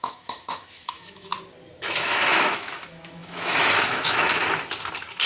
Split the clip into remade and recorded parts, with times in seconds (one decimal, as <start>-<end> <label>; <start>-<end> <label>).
0.0-1.3 remade; 1.3-2.0 recorded; 2.0-4.4 remade; 4.4-5.3 recorded